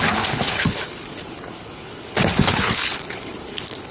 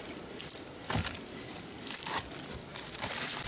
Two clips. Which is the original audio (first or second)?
second